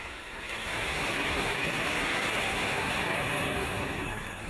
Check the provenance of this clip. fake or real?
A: fake